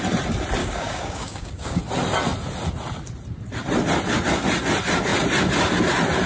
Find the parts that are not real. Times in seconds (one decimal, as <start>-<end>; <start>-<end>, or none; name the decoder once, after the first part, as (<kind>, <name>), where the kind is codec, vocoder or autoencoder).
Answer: 0.6-1.8 (codec, DAC)